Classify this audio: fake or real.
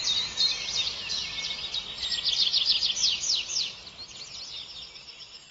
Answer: real